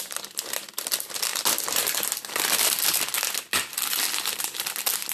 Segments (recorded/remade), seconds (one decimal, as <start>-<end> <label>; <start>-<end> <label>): 0.0-5.1 recorded